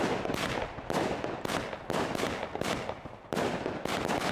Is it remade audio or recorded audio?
recorded